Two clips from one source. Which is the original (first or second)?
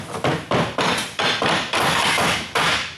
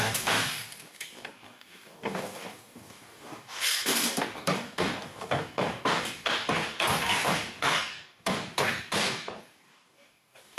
first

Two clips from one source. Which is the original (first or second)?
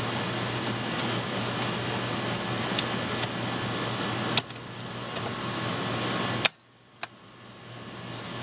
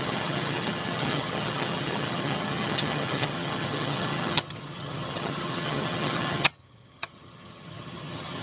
first